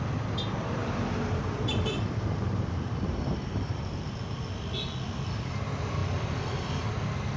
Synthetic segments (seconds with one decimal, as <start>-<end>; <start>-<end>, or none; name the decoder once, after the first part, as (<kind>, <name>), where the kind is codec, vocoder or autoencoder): 0.8-3.9 (vocoder, BigVGAN v2)